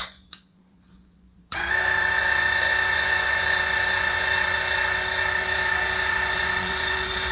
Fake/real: fake